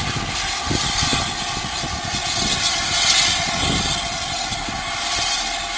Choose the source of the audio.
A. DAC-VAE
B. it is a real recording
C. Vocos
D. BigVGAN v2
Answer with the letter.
B